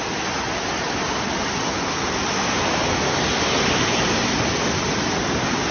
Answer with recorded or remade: recorded